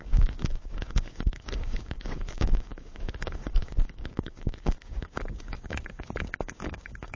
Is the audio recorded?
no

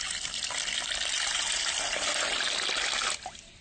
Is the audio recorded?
yes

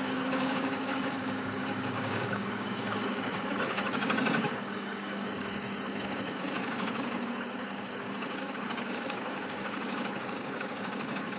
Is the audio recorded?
no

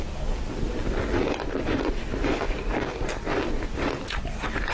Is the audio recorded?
yes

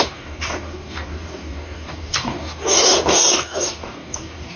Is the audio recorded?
no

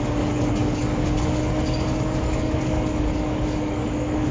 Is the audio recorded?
no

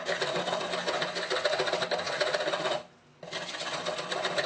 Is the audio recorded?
yes